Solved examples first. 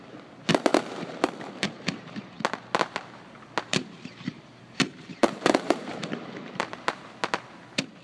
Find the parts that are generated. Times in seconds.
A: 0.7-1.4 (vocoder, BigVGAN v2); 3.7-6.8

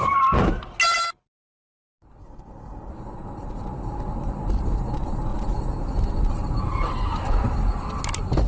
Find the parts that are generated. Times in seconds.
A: 2.2-2.9 (codec, DAC)

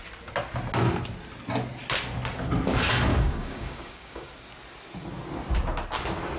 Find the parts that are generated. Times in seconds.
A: 3.1-4.3 (codec, DAC)

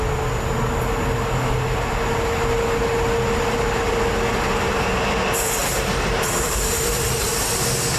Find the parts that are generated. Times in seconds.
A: 5.6-7.3 (vocoder, BigVGAN v2)

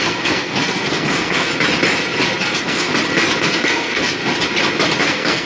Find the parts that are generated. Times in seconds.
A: 0.0-1.5 (codec, SNAC); 2.4-2.9; 3.4-4.2; 5.0-5.5

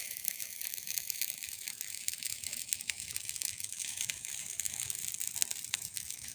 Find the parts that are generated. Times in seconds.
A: 0.0-5.0 (autoencoder, DAC-VAE); 5.7-6.3

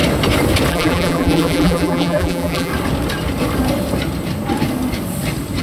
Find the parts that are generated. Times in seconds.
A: 0.7-2.7 (vocoder, BigVGAN v2)

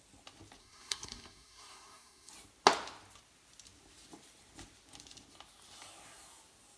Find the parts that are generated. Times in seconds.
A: 0.6-2.3 (codec, SNAC)